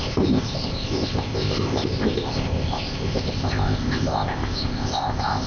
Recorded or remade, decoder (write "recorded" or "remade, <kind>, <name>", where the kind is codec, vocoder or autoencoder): remade, codec, ZipCodec